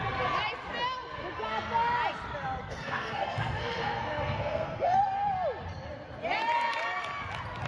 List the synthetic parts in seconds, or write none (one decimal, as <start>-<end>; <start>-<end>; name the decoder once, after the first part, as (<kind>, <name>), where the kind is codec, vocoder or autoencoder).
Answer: 2.6-5.0 (codec, SNAC)